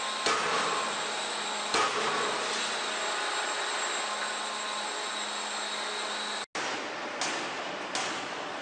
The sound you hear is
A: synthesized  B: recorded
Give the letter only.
B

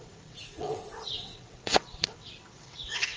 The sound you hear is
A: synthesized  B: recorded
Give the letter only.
A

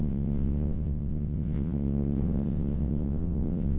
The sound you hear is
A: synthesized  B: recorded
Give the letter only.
A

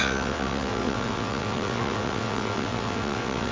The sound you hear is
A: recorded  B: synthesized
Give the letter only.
B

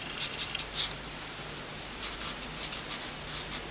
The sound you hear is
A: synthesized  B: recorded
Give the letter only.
B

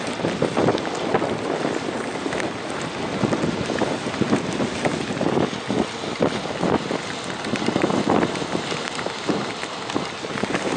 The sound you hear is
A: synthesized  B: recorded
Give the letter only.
B